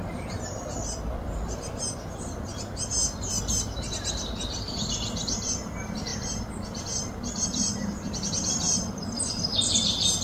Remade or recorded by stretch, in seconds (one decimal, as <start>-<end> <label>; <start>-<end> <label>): 0.0-10.2 remade

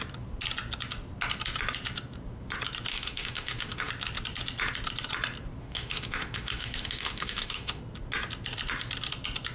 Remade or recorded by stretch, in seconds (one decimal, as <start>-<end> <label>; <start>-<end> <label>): 0.0-2.9 recorded; 2.9-3.9 remade; 3.9-5.6 recorded; 5.6-7.8 remade; 7.8-9.5 recorded

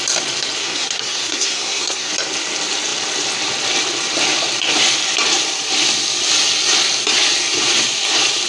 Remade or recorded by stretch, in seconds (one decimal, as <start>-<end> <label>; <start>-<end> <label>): 0.0-0.6 recorded; 0.6-2.1 remade; 2.1-8.5 recorded

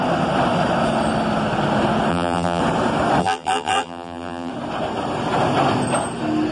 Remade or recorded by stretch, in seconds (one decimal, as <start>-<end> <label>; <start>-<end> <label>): 0.0-2.1 recorded; 2.1-2.6 remade; 2.6-3.2 recorded; 3.2-4.5 remade; 4.5-6.5 recorded

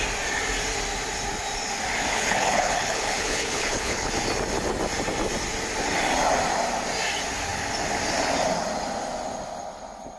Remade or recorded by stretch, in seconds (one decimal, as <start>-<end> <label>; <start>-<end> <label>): 0.0-2.1 recorded; 2.1-4.1 remade; 4.1-10.2 recorded

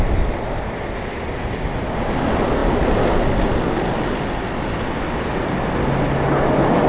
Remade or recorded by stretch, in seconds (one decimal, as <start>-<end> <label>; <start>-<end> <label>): 0.0-6.9 recorded

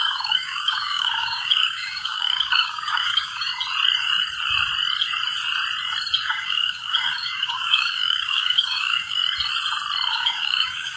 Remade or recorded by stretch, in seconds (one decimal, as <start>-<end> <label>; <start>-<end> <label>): 0.0-3.5 remade; 3.5-6.2 recorded; 6.2-9.2 remade; 9.2-10.1 recorded; 10.1-11.0 remade